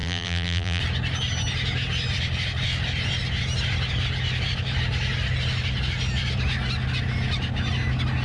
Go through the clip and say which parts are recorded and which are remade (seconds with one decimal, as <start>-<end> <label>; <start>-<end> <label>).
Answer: 0.0-0.8 remade; 0.8-8.2 recorded